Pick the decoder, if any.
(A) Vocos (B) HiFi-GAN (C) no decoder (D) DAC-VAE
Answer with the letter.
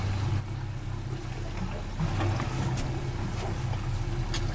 C